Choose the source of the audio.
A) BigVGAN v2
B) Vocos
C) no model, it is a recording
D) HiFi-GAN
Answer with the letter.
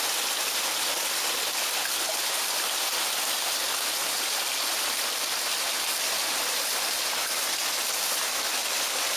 C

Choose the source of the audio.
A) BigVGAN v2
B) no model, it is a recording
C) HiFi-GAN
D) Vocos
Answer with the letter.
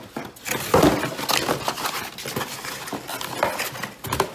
B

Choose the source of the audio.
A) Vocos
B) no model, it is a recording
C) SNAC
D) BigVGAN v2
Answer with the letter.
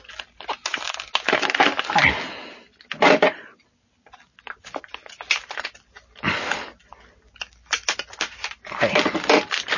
B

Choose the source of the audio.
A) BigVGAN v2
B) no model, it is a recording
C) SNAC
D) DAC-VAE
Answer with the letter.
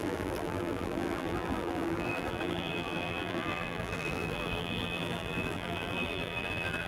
A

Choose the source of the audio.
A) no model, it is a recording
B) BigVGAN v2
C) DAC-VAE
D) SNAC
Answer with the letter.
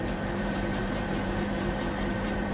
B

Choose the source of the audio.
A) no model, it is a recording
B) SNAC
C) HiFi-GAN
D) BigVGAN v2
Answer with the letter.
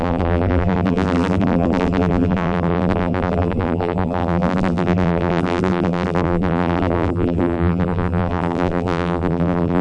D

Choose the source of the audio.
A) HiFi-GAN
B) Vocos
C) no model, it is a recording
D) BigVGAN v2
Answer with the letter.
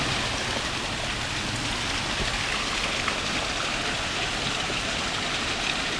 C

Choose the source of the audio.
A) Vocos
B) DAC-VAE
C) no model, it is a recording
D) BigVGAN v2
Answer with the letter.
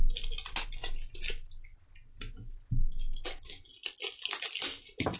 C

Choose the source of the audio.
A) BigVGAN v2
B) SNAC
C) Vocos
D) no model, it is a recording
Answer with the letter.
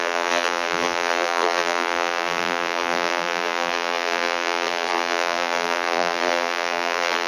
A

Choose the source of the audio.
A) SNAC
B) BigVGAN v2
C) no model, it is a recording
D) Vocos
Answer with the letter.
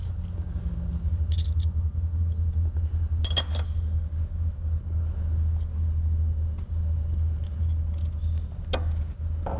C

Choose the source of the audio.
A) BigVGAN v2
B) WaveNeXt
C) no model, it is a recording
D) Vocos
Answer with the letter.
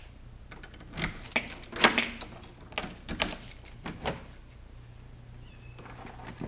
C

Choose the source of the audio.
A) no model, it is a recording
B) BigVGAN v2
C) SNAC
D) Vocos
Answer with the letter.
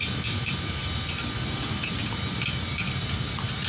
B